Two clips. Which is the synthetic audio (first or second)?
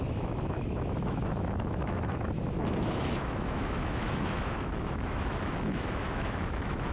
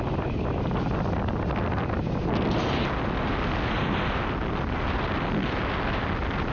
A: first